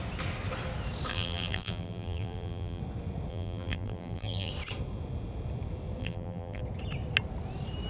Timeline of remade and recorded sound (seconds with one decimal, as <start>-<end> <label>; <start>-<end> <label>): 0.0-1.1 recorded; 1.1-2.8 remade; 2.8-3.3 recorded; 3.3-4.5 remade; 4.5-6.0 recorded; 6.0-6.6 remade; 6.6-7.9 recorded